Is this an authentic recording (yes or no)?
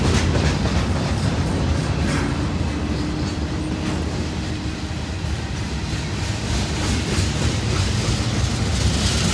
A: yes